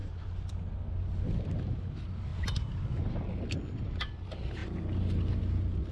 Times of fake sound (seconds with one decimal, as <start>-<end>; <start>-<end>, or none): none